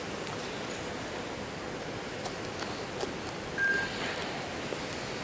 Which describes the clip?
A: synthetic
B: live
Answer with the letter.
B